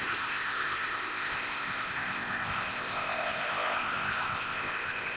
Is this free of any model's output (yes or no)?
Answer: no